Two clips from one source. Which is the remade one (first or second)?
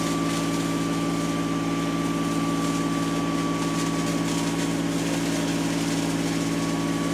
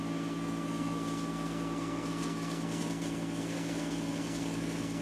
second